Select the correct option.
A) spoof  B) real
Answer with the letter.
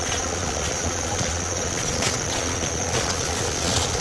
A